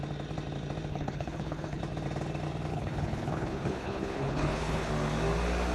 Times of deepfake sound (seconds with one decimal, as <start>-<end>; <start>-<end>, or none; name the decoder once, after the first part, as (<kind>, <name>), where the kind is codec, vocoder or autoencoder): 0.9-1.8 (codec, HILCodec); 2.7-4.9